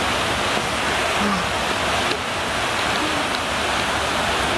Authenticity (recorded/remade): recorded